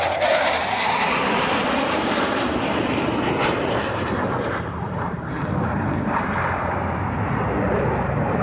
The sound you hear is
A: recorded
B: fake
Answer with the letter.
B